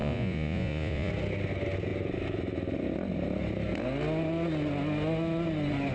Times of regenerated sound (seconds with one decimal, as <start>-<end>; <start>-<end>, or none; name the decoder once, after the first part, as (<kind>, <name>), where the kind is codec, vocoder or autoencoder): 0.0-1.1 (vocoder, Vocos)

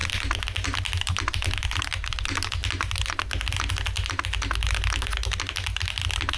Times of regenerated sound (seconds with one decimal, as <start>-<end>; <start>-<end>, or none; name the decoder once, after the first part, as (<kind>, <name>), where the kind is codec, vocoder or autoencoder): 1.8-2.6 (vocoder, BigVGAN v2)

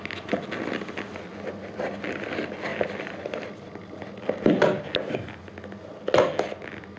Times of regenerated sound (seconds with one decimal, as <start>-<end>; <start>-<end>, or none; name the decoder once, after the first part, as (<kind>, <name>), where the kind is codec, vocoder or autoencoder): none

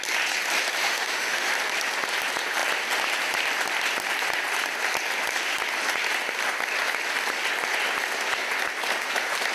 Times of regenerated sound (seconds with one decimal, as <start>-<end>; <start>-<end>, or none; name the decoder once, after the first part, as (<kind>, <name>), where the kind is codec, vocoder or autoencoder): 0.8-1.5 (autoencoder, DAC-VAE)